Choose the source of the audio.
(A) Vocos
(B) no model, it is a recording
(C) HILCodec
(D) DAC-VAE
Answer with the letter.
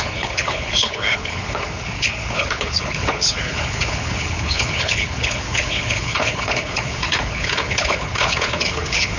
C